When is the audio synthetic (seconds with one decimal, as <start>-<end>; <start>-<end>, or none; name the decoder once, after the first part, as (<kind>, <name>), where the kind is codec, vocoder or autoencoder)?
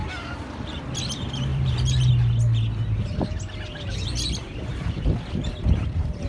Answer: 0.0-0.8 (vocoder, BigVGAN v2); 1.5-2.1; 4.4-5.1